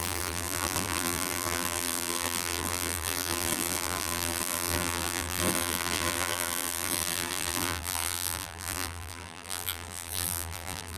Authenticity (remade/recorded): remade